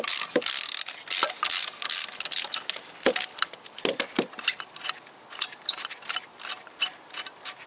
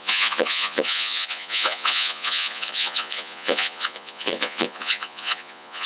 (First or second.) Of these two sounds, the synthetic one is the second